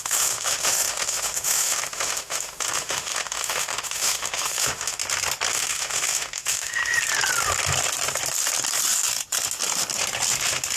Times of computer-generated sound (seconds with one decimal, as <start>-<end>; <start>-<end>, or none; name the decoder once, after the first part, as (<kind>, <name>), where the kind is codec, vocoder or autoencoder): 0.0-5.0 (autoencoder, DAC-VAE); 5.5-6.8